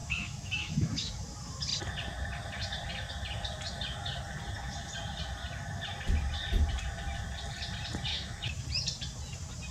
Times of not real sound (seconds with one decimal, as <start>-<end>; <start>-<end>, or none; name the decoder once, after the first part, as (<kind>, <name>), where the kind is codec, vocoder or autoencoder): 0.0-1.1 (autoencoder, DAC-VAE); 8.1-8.6